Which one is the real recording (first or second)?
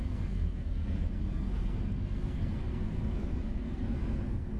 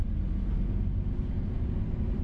second